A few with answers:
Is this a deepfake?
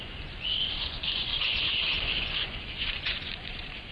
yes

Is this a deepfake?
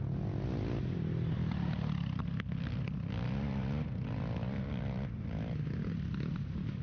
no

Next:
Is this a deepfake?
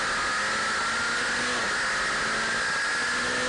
no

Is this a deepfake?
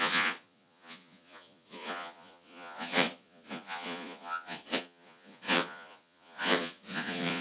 yes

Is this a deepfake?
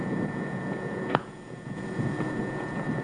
yes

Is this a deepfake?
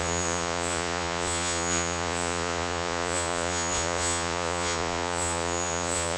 yes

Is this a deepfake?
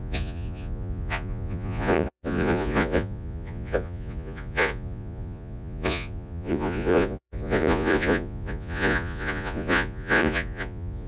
yes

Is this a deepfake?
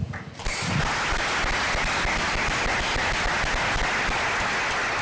no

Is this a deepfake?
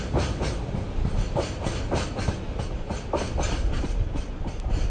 no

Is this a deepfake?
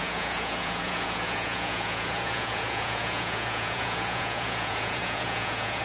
yes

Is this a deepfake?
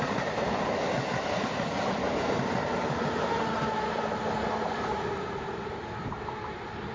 no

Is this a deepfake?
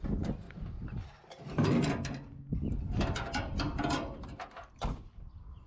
no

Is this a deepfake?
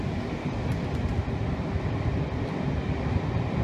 no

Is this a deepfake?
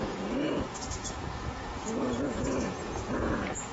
yes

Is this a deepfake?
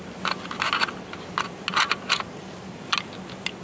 no